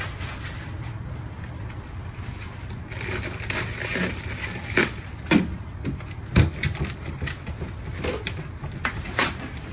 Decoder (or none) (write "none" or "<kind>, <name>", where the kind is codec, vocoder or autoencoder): none